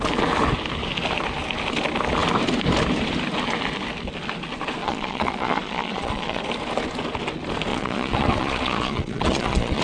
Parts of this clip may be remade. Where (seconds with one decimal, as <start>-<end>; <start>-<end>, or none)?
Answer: 4.8-6.4; 7.7-9.8